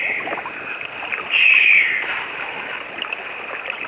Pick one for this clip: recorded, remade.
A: recorded